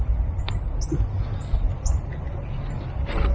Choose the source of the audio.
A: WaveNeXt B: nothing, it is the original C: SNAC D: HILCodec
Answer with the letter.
B